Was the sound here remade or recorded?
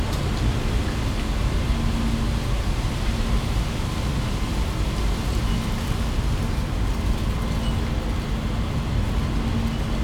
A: recorded